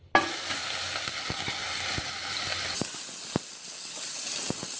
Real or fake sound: real